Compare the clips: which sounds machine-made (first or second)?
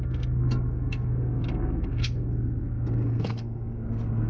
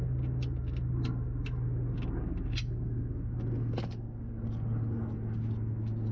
first